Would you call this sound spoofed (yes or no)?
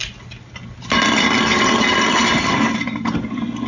no